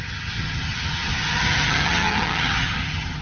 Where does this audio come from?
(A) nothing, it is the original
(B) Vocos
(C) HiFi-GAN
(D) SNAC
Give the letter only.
C